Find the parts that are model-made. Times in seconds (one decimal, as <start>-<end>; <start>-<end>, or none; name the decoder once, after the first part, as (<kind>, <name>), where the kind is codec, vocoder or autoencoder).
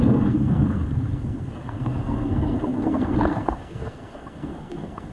0.0-5.1 (codec, SNAC)